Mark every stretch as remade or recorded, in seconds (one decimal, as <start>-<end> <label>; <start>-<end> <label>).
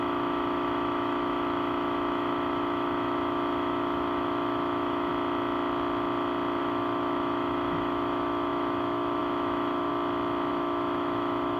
0.0-5.1 remade; 5.1-6.6 recorded; 6.6-9.9 remade; 9.9-10.5 recorded; 10.5-11.6 remade